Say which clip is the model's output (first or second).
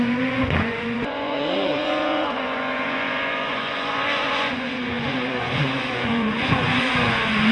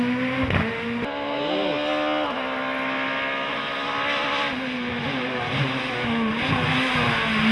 first